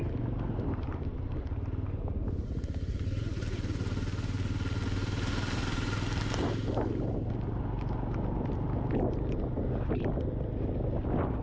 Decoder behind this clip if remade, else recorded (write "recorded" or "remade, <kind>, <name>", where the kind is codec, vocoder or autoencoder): recorded